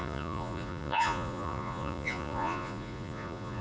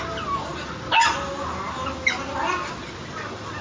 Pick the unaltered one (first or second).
second